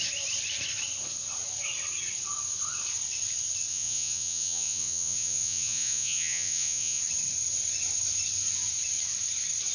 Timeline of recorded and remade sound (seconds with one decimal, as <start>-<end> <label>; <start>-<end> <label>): 0.0-3.7 recorded; 3.7-7.0 remade; 7.0-9.7 recorded